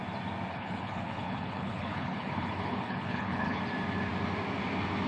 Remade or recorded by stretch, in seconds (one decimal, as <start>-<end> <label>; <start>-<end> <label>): 0.0-0.5 recorded; 0.5-3.6 remade; 3.6-5.1 recorded